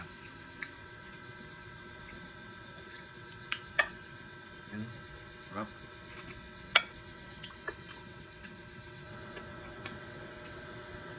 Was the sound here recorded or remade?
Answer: remade